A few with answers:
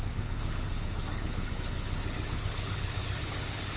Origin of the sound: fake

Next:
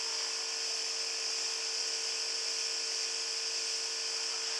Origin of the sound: real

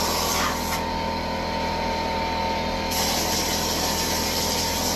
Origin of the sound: real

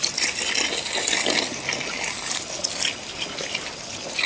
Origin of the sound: real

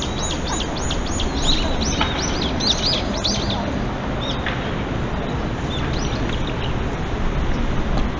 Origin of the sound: real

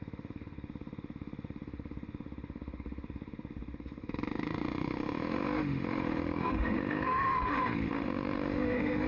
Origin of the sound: fake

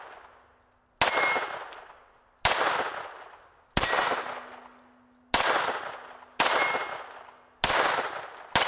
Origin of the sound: real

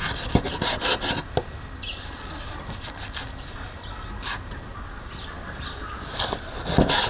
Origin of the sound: real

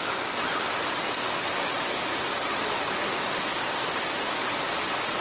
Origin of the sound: real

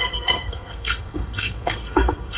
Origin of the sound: fake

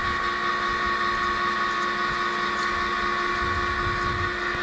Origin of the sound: real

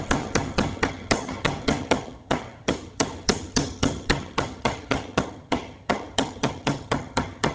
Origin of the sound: fake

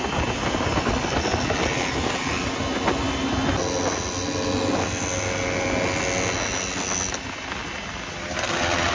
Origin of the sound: real